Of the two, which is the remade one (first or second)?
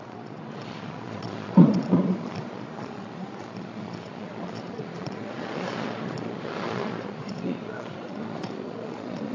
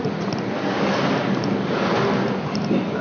first